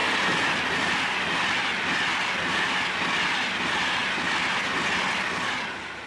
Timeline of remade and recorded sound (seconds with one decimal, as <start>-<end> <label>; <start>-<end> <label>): 0.0-6.1 recorded